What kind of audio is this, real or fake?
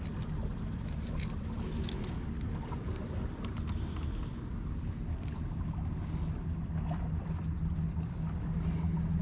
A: real